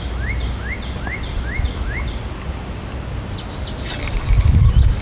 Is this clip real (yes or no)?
yes